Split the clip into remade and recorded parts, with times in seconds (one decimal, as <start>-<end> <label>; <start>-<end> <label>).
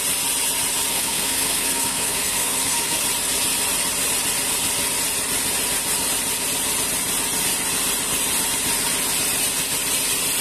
0.0-0.9 recorded; 0.9-3.0 remade; 3.0-10.4 recorded